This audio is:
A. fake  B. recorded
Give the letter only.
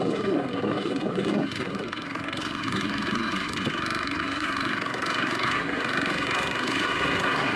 A